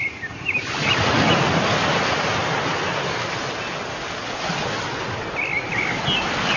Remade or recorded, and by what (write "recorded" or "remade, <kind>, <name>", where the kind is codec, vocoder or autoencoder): recorded